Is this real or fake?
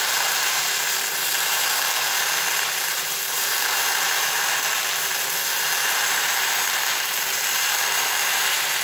fake